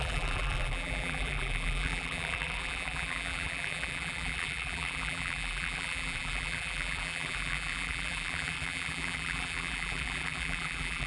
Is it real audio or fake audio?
fake